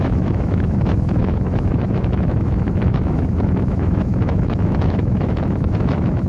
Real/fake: fake